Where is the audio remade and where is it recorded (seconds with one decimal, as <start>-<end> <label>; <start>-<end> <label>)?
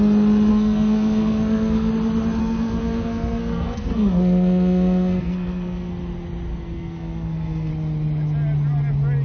0.0-0.5 recorded; 0.5-1.9 remade; 1.9-2.4 recorded; 2.4-5.9 remade; 5.9-6.5 recorded; 6.5-7.7 remade; 7.7-9.2 recorded